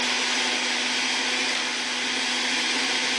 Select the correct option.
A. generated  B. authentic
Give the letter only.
B